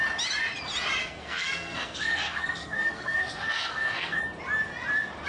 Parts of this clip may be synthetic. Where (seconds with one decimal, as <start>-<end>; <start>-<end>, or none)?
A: 1.0-4.2